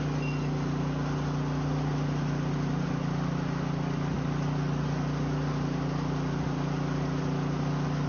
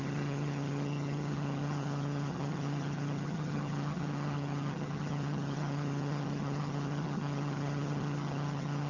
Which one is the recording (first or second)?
first